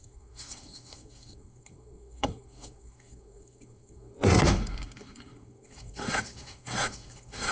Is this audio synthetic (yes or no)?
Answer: yes